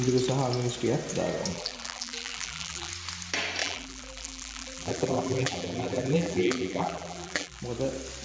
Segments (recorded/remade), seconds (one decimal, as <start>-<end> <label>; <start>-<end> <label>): 0.0-1.5 recorded; 1.5-2.9 remade; 2.9-3.6 recorded; 3.6-7.6 remade; 7.6-8.2 recorded